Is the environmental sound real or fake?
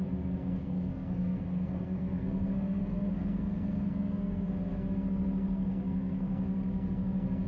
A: fake